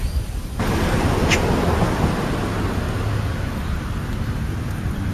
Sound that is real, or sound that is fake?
real